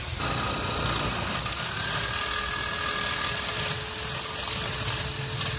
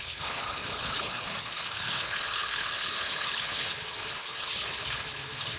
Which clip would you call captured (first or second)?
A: first